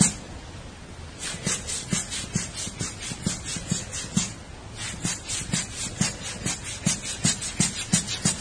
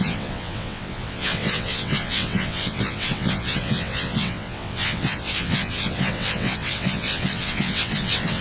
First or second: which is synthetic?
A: second